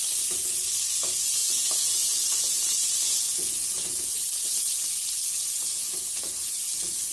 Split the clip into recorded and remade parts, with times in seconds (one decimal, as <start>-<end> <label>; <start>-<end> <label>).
0.0-1.4 recorded; 1.4-4.2 remade; 4.2-5.3 recorded; 5.3-7.1 remade